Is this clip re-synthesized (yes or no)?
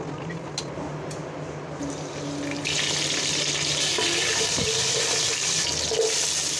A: no